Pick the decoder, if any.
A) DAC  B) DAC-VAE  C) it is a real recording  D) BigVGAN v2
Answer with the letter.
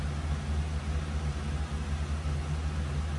C